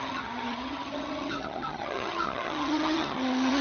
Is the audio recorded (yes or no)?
no